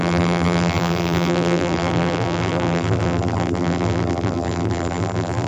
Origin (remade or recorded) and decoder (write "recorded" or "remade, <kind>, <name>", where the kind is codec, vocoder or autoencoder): remade, vocoder, BigVGAN v2